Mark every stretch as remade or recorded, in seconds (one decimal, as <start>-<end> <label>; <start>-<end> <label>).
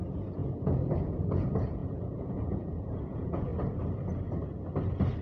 0.0-3.5 remade; 3.5-5.2 recorded